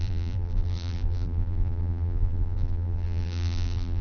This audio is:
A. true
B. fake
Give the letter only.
B